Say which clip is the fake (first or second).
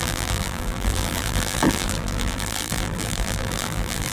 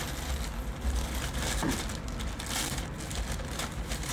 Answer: first